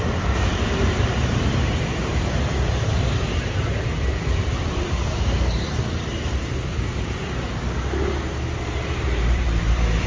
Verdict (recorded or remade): remade